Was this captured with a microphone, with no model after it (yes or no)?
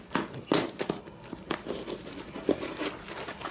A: yes